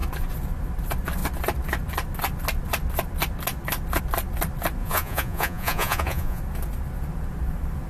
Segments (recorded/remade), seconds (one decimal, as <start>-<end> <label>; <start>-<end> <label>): 0.0-4.8 recorded; 4.8-6.4 remade; 6.4-7.9 recorded